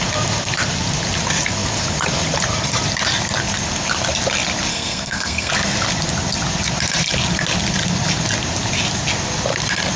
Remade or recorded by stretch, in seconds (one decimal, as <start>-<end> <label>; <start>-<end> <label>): 0.0-4.7 recorded; 4.7-5.5 remade; 5.5-10.0 recorded